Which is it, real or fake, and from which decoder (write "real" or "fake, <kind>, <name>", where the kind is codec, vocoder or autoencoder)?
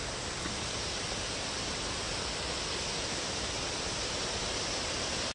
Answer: real